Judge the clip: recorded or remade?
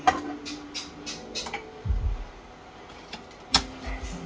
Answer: recorded